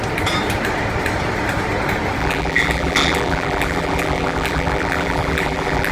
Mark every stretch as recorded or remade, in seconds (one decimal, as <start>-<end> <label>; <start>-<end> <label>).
0.0-2.2 recorded; 2.2-5.9 remade

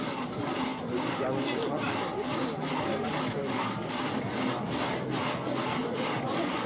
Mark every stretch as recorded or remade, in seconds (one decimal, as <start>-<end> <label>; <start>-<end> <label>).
0.0-5.8 recorded; 5.8-6.7 remade

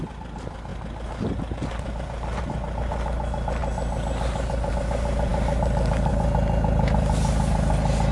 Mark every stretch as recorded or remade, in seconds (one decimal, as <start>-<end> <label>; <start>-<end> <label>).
0.0-8.1 recorded

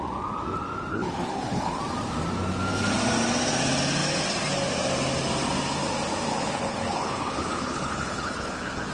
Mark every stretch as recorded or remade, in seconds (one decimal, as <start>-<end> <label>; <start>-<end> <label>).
0.0-0.9 recorded; 0.9-1.8 remade; 1.8-6.3 recorded; 6.3-8.9 remade

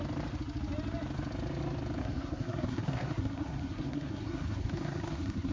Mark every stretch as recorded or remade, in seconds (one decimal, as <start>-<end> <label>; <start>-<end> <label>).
0.0-2.0 recorded; 2.0-5.5 remade

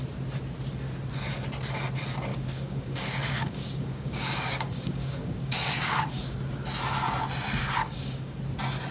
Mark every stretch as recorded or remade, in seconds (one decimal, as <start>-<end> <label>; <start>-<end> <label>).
0.0-2.3 recorded; 2.3-6.2 remade; 6.2-7.8 recorded; 7.8-8.4 remade; 8.4-8.9 recorded

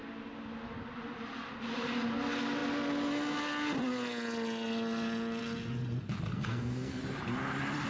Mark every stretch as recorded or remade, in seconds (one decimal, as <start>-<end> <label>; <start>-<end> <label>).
0.0-6.3 recorded; 6.3-7.0 remade; 7.0-7.9 recorded